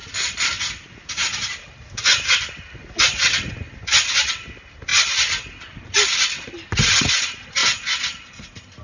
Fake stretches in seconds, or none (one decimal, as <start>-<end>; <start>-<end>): none